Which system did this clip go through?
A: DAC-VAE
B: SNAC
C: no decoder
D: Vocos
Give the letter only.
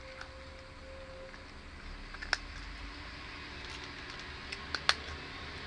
C